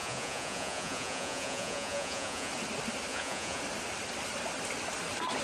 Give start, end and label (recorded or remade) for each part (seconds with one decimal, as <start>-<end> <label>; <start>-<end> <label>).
0.0-2.5 remade; 2.5-3.1 recorded; 3.1-3.6 remade; 3.6-5.4 recorded